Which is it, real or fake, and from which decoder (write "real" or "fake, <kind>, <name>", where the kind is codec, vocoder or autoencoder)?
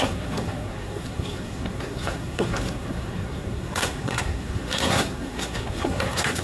fake, codec, SNAC